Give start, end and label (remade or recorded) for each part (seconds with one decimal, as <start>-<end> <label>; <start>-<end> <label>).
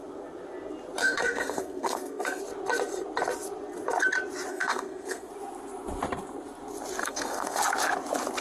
0.0-1.0 recorded; 1.0-2.4 remade; 2.4-4.5 recorded; 4.5-5.3 remade; 5.3-7.0 recorded; 7.0-7.6 remade; 7.6-8.4 recorded